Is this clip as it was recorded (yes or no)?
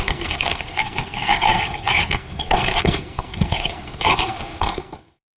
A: no